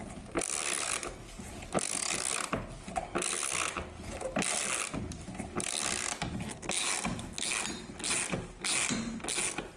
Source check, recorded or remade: recorded